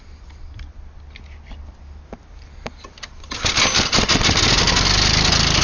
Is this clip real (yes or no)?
yes